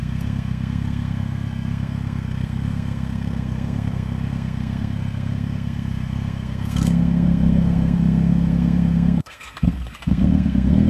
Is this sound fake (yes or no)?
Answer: yes